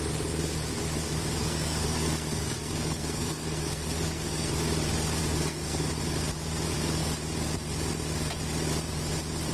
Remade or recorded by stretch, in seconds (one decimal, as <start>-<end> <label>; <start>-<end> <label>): 0.0-1.4 recorded; 1.4-4.5 remade; 4.5-5.2 recorded; 5.2-5.9 remade; 5.9-9.5 recorded